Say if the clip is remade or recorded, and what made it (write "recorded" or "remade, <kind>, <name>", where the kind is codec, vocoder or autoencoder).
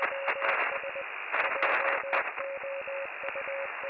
recorded